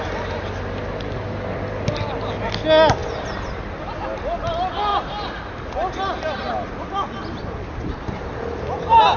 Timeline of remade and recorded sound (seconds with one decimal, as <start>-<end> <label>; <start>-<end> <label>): 0.0-4.9 recorded; 4.9-5.5 remade; 5.5-9.2 recorded